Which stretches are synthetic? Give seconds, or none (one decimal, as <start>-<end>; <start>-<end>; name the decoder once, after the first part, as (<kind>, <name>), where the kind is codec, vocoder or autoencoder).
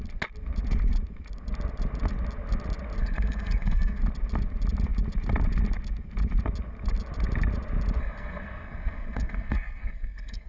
3.0-4.0 (codec, SNAC); 8.0-10.5